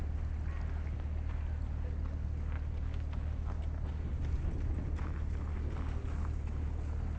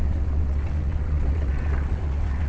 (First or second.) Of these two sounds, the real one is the first